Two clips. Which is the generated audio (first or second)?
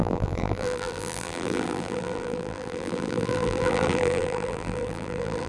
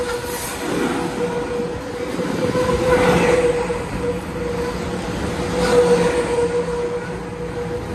first